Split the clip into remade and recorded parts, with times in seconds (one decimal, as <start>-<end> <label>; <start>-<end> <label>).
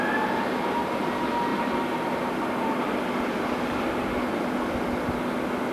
0.0-5.7 recorded